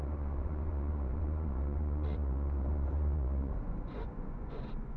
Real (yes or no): no